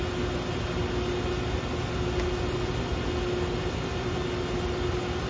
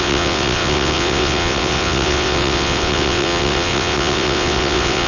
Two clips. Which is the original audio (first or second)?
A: first